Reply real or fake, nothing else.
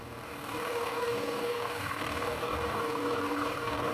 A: fake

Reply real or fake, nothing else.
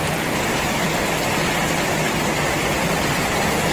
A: real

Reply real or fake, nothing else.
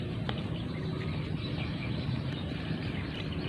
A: fake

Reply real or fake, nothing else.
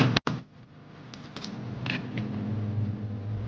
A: real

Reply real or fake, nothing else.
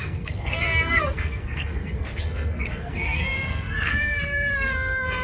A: fake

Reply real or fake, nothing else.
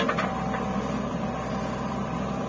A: real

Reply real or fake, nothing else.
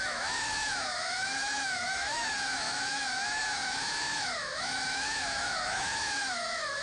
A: fake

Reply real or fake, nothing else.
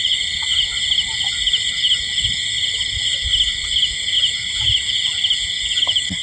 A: real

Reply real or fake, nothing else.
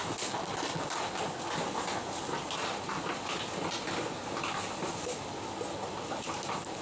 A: real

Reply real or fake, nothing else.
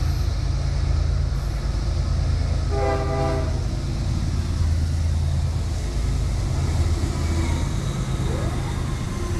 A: real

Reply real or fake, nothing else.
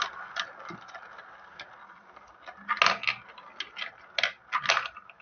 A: real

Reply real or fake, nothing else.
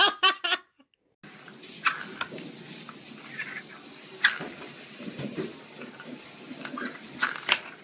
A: real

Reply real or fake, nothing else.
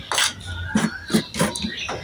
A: real